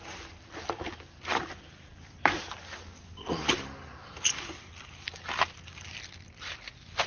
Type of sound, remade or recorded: recorded